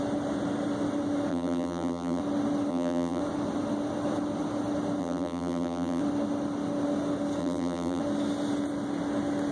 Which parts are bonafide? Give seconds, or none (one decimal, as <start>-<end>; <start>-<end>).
0.0-1.3; 2.2-2.7; 3.2-5.0; 6.0-7.4; 8.0-9.5